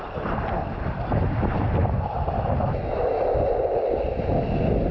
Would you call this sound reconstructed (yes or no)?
no